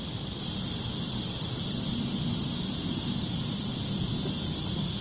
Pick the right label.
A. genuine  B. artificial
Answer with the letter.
A